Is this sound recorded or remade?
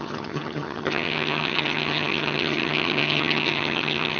remade